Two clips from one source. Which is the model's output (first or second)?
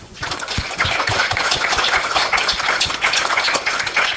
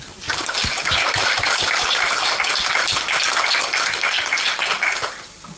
first